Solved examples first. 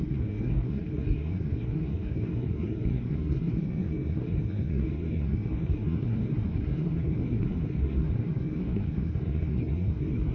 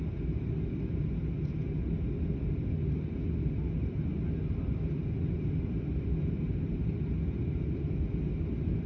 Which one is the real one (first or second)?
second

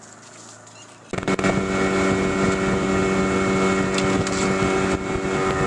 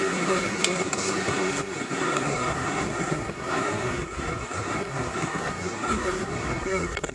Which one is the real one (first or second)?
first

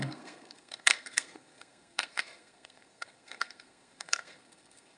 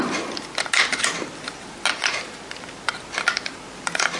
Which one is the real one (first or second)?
second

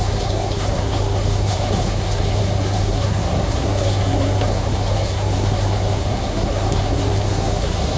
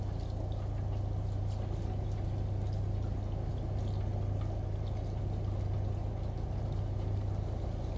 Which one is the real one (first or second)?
second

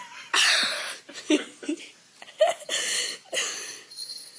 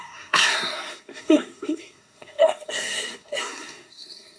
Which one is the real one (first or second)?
first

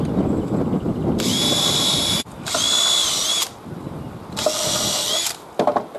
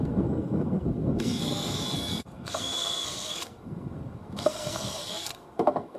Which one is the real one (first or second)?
first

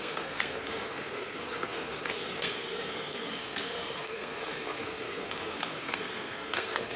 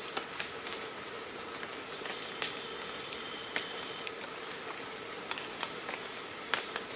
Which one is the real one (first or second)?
second